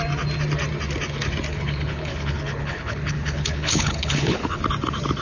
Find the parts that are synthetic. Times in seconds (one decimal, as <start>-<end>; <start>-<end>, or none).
1.5-4.6

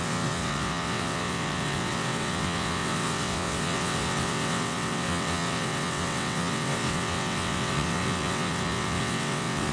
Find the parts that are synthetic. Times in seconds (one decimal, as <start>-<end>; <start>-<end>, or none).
0.0-9.7